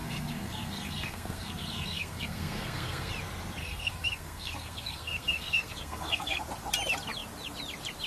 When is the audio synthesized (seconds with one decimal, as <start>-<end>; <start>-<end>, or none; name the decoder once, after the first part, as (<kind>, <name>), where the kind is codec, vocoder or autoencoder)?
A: 0.0-3.1 (codec, SNAC); 3.6-6.4